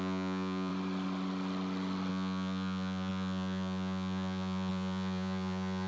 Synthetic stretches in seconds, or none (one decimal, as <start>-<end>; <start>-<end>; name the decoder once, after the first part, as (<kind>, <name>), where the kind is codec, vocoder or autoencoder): 0.0-0.7 (vocoder, Vocos); 2.1-5.9